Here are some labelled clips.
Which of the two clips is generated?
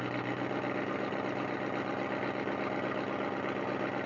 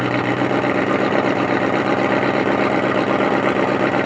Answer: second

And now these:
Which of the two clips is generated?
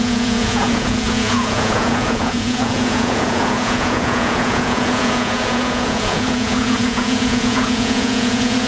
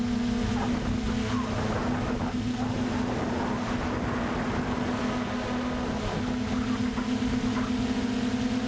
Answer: first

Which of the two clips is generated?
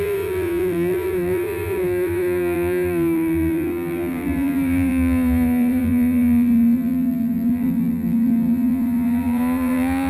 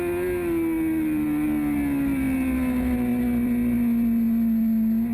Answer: first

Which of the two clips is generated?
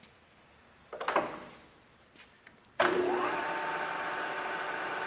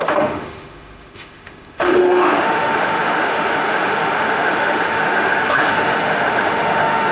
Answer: second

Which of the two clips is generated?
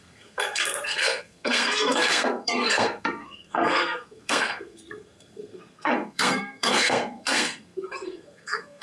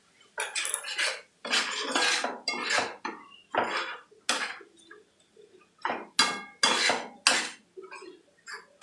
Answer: first